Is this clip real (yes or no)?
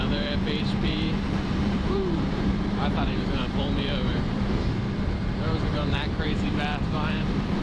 no